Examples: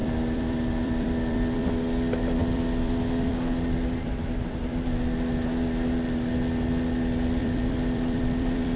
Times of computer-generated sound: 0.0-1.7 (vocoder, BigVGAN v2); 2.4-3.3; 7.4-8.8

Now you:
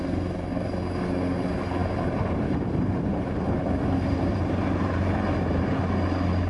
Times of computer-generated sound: 1.8-5.7 (vocoder, BigVGAN v2)

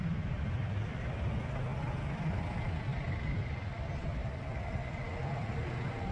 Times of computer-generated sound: none

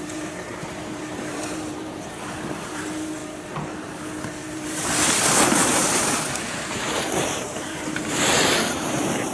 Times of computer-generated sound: 0.0-3.2 (vocoder, BigVGAN v2); 4.4-9.3

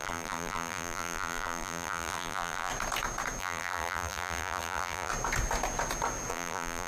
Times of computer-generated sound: 0.0-2.7 (vocoder, BigVGAN v2); 3.4-5.1; 6.3-6.9

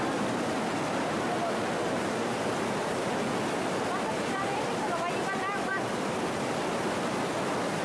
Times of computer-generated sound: 1.8-4.6 (vocoder, BigVGAN v2)

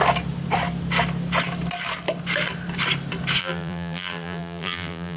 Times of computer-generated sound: 3.4-5.2 (vocoder, BigVGAN v2)

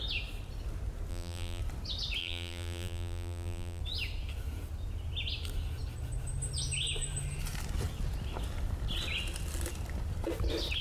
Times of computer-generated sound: 1.1-1.6 (vocoder, BigVGAN v2); 2.2-3.8